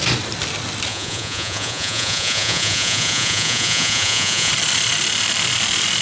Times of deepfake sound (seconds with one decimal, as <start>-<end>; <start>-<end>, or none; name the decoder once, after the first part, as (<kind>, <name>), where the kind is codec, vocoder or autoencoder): 0.9-4.5 (vocoder, Vocos)